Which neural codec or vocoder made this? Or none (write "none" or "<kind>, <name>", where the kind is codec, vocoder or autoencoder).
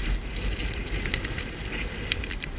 vocoder, BigVGAN v2